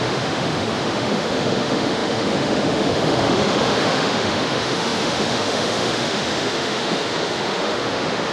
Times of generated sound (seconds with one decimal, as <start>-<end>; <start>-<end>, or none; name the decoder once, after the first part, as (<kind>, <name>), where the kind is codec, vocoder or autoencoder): 0.0-8.3 (autoencoder, DAC-VAE)